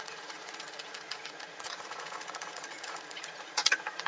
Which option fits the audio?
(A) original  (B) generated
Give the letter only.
B